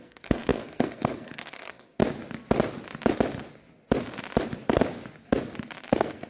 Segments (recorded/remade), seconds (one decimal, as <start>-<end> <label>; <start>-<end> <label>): 0.0-2.0 remade; 2.0-5.8 recorded; 5.8-6.3 remade